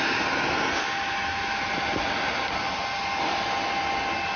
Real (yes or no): yes